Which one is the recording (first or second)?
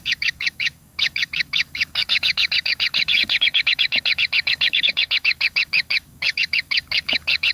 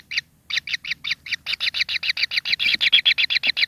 second